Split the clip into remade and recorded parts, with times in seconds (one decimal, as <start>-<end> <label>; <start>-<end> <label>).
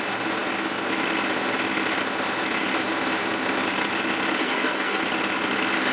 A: 0.0-4.4 recorded; 4.4-5.0 remade; 5.0-5.9 recorded